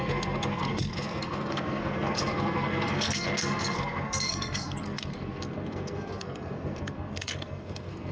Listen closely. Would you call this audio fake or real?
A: fake